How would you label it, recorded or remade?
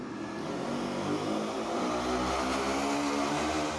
recorded